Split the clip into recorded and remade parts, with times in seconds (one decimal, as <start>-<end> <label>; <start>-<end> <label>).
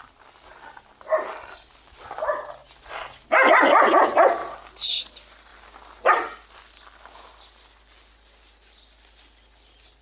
0.0-10.0 recorded